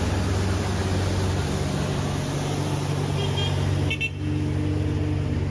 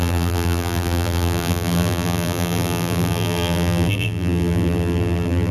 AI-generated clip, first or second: second